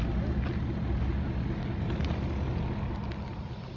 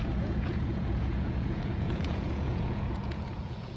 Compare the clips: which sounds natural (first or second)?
first